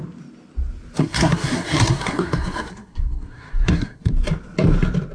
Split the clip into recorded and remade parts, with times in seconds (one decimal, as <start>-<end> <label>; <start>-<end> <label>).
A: 0.0-1.0 recorded; 1.0-4.1 remade; 4.1-5.1 recorded